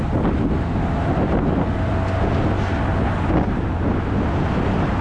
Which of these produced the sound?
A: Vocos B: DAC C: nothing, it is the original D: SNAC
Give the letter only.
C